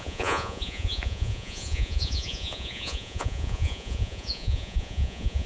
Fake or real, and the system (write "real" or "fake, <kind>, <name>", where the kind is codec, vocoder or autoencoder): fake, vocoder, Vocos